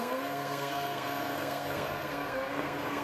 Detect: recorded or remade remade